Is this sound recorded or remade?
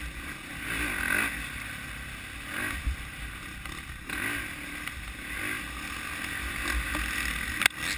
recorded